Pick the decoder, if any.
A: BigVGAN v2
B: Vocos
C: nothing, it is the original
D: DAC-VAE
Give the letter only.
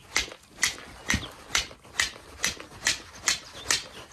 C